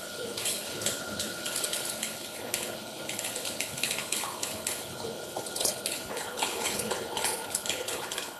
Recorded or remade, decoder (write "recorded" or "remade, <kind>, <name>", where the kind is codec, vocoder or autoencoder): remade, codec, HILCodec